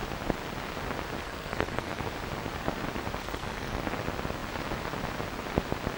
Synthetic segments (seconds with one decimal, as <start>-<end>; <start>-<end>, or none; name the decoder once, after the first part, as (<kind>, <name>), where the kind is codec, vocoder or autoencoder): 1.2-2.0 (codec, SNAC); 3.2-3.8